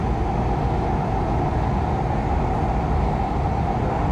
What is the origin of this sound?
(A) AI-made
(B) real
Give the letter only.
B